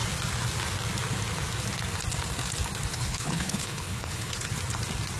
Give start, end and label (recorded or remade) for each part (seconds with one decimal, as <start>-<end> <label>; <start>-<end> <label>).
0.0-2.9 recorded; 2.9-4.5 remade; 4.5-5.2 recorded